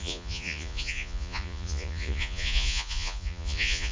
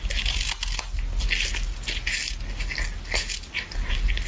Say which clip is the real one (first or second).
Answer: second